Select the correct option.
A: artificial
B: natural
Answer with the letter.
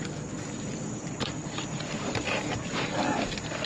A